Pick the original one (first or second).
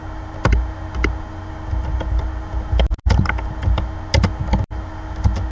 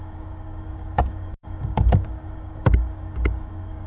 first